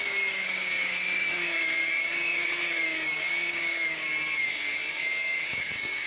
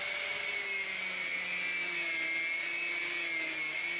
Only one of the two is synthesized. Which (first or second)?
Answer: first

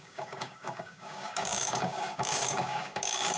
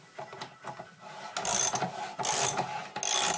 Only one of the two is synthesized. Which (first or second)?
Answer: first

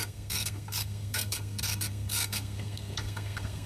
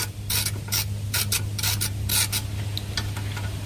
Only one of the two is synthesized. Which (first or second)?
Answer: first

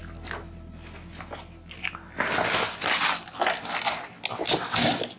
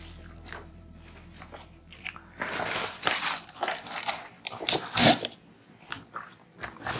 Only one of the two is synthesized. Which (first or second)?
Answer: second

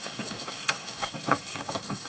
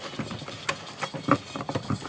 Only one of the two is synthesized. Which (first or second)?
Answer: first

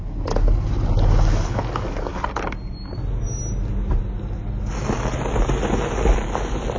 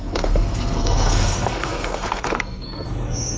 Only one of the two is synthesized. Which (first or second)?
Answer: second